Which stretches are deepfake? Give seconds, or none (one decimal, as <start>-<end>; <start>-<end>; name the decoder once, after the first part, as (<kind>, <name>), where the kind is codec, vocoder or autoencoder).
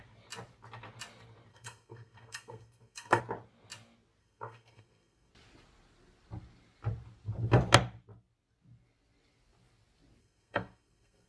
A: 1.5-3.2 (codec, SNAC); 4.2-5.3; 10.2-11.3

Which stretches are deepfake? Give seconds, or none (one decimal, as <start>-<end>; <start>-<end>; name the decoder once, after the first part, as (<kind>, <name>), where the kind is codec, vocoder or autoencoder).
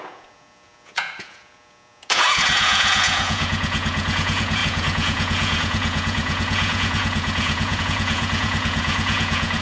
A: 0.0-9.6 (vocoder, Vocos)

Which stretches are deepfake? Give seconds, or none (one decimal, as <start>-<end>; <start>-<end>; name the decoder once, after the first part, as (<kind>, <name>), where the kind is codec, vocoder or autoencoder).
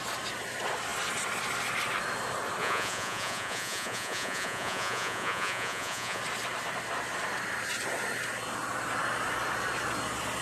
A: 2.6-6.2 (vocoder, Vocos)